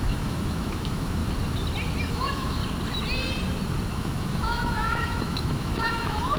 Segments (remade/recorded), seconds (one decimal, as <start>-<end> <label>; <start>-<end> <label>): 0.0-1.2 remade; 1.2-2.1 recorded; 2.1-2.6 remade; 2.6-3.9 recorded; 3.9-6.4 remade